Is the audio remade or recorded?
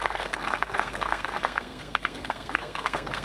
remade